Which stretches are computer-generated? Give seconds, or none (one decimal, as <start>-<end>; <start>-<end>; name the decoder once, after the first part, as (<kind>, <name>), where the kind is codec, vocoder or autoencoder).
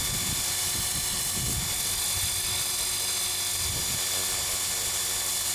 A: none